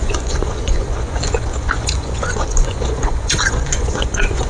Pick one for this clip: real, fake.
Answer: fake